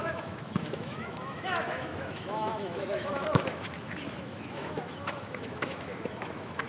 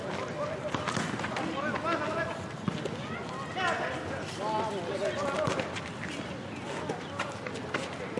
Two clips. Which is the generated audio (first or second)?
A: first